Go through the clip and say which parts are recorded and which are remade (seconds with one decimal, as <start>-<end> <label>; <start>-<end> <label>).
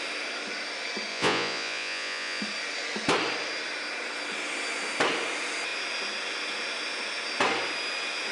0.0-1.1 recorded; 1.1-2.4 remade; 2.4-8.3 recorded